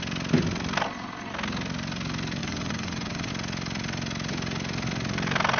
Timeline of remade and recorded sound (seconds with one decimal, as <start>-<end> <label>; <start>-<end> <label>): 0.0-2.4 recorded; 2.4-3.3 remade; 3.3-5.6 recorded